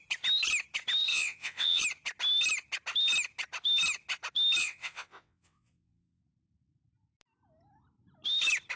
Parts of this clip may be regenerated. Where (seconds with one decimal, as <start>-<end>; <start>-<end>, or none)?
1.1-1.8; 4.6-6.2